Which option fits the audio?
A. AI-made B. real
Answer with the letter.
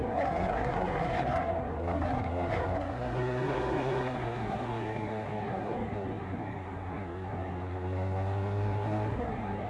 A